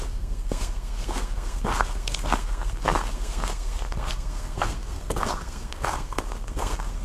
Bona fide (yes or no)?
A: no